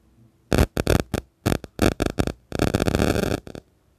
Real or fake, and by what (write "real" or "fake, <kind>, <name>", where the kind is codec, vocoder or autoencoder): real